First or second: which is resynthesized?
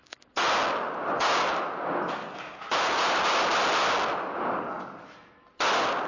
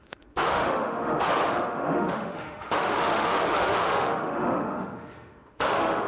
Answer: second